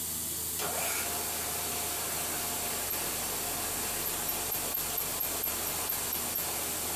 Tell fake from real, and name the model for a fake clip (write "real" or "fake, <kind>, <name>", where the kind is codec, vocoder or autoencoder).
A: real